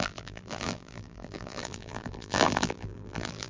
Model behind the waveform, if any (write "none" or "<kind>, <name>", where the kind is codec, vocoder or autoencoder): vocoder, BigVGAN v2